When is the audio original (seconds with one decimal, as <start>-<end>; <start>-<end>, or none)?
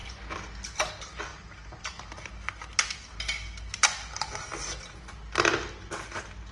0.0-6.5